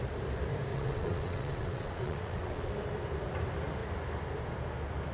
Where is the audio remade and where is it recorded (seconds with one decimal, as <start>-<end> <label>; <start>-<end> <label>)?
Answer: 0.0-0.7 recorded; 0.7-2.7 remade; 2.7-5.1 recorded